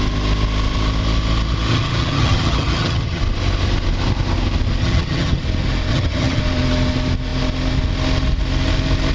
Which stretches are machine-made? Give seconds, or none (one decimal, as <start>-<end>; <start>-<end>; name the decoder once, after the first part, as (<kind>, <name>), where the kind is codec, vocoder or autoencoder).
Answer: 1.7-3.2 (vocoder, HiFi-GAN); 4.8-5.4; 5.9-6.4